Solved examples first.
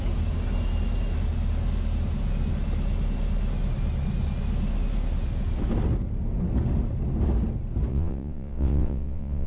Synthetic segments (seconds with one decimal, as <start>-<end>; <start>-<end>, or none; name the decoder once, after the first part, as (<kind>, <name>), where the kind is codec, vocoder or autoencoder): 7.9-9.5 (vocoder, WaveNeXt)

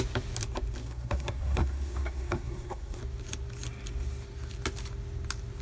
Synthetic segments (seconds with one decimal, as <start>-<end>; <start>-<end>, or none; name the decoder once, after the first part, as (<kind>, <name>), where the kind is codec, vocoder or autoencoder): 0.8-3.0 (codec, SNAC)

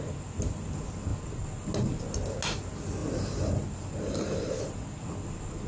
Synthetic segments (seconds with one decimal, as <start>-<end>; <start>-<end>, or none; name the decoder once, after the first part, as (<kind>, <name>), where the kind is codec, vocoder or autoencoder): none